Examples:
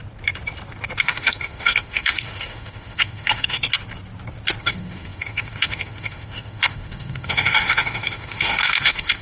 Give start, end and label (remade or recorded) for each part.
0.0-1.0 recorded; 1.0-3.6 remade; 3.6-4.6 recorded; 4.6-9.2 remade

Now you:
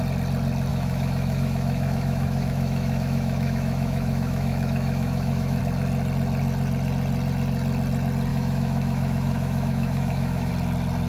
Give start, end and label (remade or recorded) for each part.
0.0-0.7 recorded; 0.7-5.6 remade; 5.6-8.3 recorded; 8.3-10.5 remade; 10.5-11.1 recorded

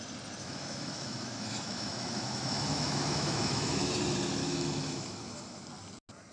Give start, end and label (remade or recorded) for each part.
0.0-0.4 recorded; 0.4-3.9 remade; 3.9-4.4 recorded; 4.4-5.6 remade; 5.6-6.3 recorded

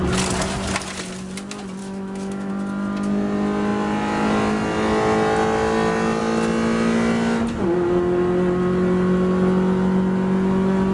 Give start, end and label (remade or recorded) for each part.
0.0-1.8 recorded; 1.8-2.5 remade; 2.5-10.9 recorded

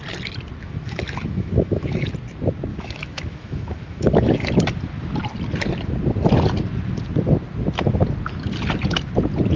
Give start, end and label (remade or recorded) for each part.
0.0-0.6 recorded; 0.6-2.1 remade; 2.1-2.7 recorded; 2.7-4.5 remade; 4.5-9.6 recorded